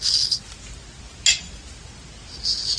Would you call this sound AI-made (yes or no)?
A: no